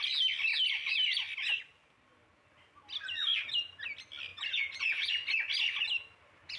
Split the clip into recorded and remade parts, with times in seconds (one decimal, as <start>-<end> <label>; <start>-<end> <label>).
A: 0.0-4.3 recorded; 4.3-5.1 remade; 5.1-6.6 recorded